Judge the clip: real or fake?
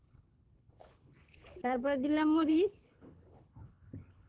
fake